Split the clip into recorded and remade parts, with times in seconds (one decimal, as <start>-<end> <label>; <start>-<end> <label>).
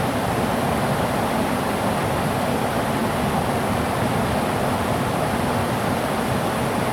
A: 0.0-6.9 recorded